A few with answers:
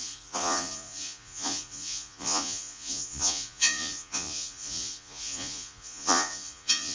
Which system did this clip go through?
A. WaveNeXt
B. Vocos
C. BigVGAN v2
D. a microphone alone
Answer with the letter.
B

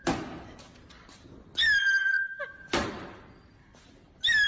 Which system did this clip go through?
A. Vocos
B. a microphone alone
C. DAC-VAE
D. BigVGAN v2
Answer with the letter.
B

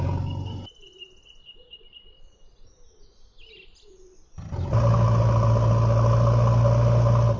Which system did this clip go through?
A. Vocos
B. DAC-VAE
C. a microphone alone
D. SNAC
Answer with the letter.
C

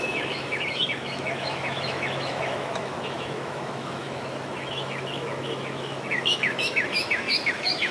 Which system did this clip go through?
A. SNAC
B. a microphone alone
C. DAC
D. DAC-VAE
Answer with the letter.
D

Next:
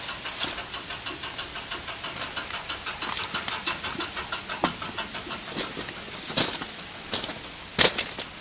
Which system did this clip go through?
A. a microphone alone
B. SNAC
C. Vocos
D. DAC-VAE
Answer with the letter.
A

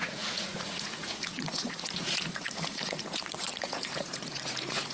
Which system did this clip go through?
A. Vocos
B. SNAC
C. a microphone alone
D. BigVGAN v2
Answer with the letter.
A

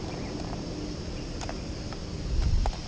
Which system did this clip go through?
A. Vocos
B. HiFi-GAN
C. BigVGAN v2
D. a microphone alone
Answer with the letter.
D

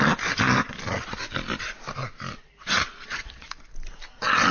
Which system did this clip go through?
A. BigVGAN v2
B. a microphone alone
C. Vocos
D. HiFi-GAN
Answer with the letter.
B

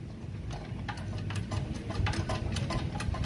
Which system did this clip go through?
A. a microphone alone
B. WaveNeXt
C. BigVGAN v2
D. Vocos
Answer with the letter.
A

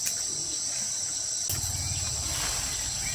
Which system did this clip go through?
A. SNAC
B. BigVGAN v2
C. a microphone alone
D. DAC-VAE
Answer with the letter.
C